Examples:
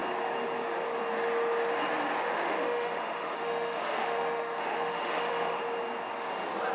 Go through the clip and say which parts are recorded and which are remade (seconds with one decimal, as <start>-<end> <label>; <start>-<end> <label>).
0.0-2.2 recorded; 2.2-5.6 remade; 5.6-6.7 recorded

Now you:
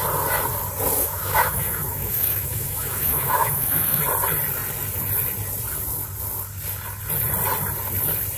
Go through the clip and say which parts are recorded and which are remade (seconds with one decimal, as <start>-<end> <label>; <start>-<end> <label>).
0.0-1.0 recorded; 1.0-4.0 remade; 4.0-8.4 recorded

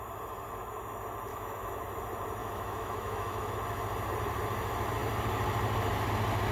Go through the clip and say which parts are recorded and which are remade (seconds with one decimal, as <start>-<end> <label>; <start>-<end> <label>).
0.0-1.3 recorded; 1.3-1.8 remade; 1.8-2.4 recorded; 2.4-3.5 remade; 3.5-6.5 recorded

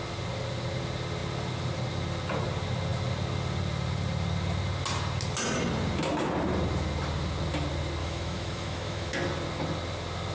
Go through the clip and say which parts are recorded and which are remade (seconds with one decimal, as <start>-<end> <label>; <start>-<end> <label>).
0.0-8.0 recorded; 8.0-9.1 remade; 9.1-10.3 recorded